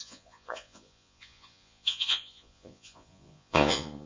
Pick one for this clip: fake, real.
fake